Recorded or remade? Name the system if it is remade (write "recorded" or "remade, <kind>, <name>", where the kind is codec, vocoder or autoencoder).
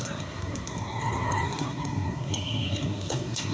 remade, codec, SNAC